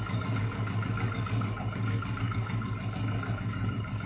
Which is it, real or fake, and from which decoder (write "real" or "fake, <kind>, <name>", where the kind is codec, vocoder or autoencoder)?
fake, codec, DAC